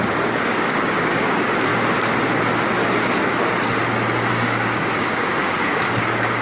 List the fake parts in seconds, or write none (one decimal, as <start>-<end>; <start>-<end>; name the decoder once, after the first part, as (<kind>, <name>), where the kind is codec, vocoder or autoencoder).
0.0-1.7 (codec, DAC); 4.3-6.4